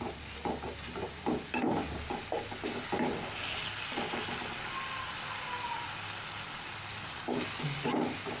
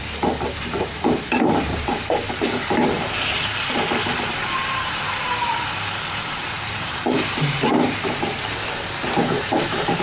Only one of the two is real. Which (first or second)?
first